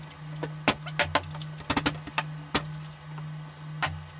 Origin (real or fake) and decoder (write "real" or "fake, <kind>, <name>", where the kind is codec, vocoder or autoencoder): real